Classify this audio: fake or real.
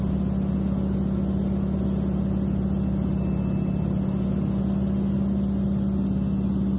real